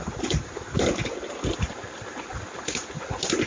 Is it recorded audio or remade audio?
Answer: recorded